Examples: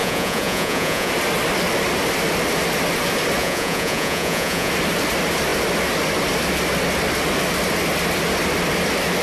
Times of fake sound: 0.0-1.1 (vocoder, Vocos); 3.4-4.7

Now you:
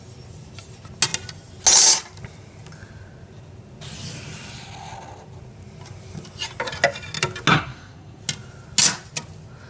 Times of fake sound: 7.5-8.2 (codec, SNAC)

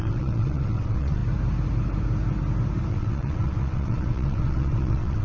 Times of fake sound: 0.0-1.2 (vocoder, WaveNeXt); 2.9-5.2

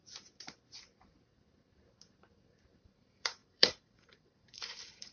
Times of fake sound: 2.8-5.1 (vocoder, BigVGAN v2)